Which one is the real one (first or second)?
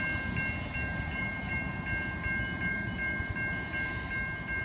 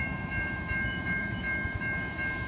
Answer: first